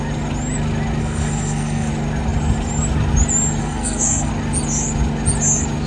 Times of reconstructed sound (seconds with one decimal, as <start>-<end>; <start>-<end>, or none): 1.0-1.9; 3.6-4.3